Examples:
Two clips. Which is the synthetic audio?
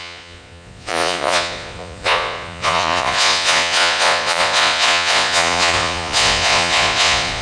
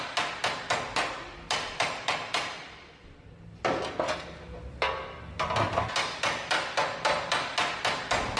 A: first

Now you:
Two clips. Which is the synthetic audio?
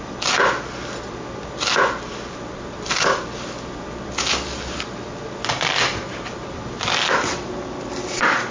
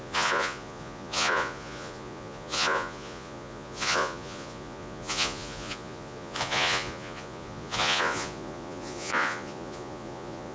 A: second